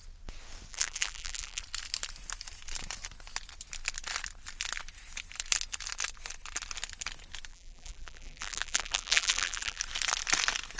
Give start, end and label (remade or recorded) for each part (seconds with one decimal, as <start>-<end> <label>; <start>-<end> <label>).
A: 0.0-0.7 recorded; 0.7-1.6 remade; 1.6-7.5 recorded; 7.5-9.8 remade; 9.8-10.8 recorded